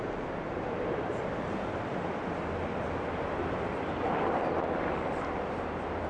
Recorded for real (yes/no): no